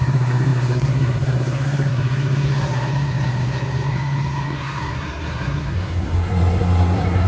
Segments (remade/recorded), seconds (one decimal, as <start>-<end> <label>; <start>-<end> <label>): 0.0-7.3 remade